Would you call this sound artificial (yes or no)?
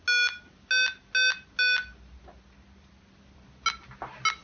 no